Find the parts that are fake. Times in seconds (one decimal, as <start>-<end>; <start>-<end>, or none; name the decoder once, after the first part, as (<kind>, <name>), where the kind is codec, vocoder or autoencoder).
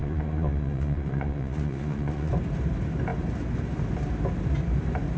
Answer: 0.0-2.3 (vocoder, Vocos)